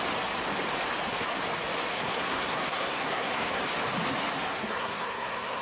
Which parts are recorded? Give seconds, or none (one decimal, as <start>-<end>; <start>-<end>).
0.0-1.9; 3.6-4.5